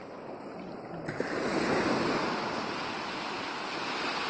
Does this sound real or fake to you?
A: real